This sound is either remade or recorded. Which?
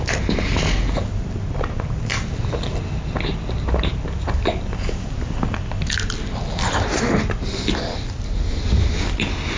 recorded